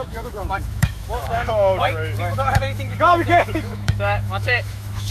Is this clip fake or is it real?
fake